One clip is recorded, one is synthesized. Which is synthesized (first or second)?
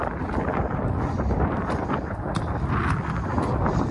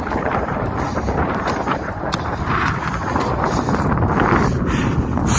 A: second